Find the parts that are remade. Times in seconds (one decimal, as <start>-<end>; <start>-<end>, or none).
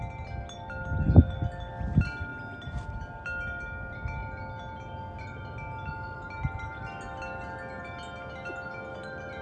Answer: none